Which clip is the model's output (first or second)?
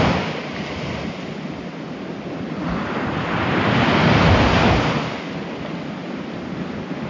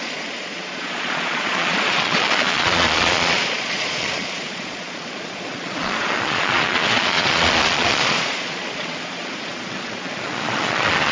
second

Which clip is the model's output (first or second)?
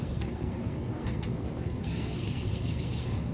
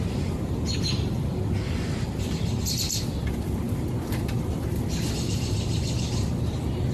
first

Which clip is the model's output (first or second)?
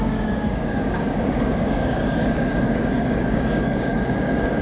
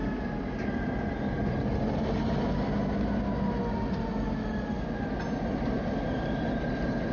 first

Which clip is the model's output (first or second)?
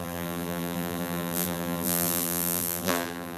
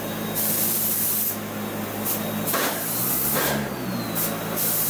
first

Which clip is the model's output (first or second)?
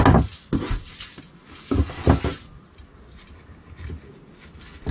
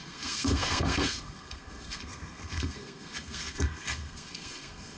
second